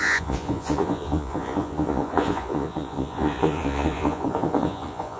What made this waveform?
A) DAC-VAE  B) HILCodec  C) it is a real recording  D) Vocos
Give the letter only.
D